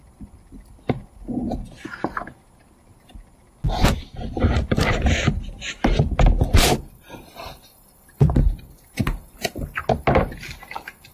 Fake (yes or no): no